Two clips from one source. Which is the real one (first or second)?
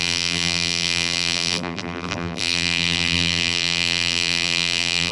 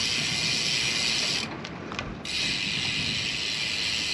second